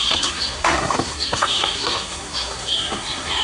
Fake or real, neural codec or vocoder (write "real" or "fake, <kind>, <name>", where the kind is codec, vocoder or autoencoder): fake, codec, SNAC